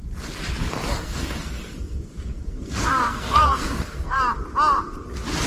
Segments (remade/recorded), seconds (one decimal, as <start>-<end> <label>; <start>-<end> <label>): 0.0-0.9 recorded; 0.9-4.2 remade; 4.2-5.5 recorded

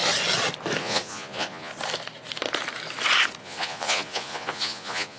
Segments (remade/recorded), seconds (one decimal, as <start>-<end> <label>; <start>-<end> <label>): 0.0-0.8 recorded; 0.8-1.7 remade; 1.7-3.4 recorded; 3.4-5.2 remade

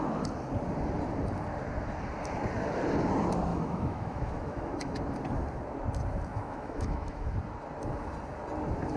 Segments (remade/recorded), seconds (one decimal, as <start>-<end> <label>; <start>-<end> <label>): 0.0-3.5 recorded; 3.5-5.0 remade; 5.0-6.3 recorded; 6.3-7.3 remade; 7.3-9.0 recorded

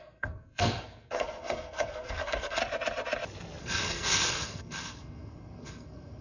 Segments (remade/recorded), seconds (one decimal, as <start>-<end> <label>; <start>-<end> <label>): 0.0-2.6 remade; 2.6-3.6 recorded; 3.6-6.2 remade

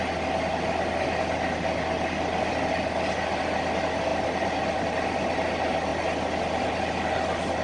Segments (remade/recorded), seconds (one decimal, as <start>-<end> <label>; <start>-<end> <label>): 0.0-7.6 recorded

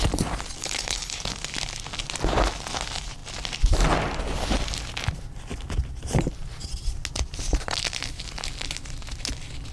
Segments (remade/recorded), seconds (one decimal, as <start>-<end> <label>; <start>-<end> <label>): 0.0-0.6 recorded; 0.6-1.2 remade; 1.2-9.7 recorded

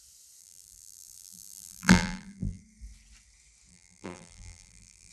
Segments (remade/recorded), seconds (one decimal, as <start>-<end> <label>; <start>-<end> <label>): 0.0-0.4 recorded; 0.4-2.6 remade; 2.6-3.7 recorded; 3.7-5.1 remade

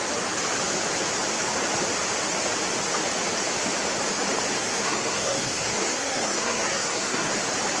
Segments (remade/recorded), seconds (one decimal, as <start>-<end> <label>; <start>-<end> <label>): 0.0-4.6 recorded; 4.6-7.3 remade; 7.3-7.8 recorded